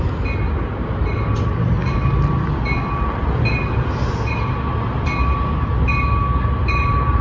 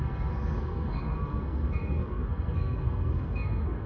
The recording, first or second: first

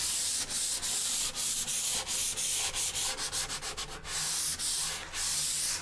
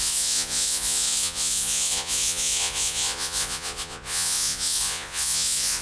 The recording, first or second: first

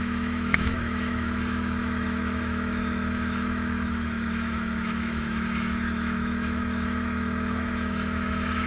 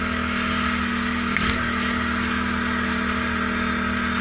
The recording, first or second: second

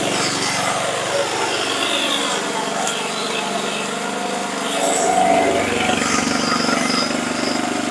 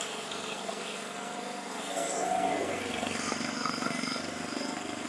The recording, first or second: first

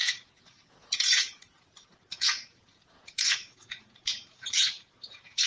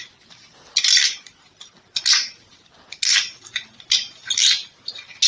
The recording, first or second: second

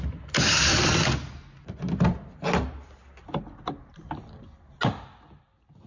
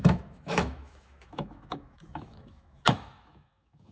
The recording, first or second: first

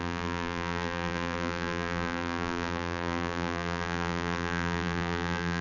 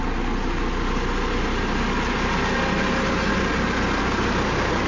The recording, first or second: second